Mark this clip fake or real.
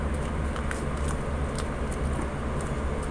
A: real